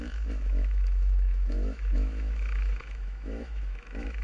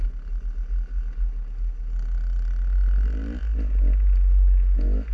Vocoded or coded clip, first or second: first